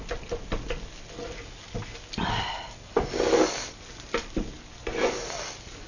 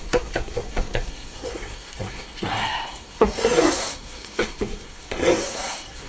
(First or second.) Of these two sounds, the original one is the first